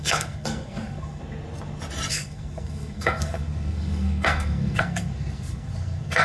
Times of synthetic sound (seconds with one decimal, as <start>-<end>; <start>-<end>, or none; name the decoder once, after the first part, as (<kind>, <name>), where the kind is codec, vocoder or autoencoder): 0.0-1.2 (codec, SNAC); 2.1-6.2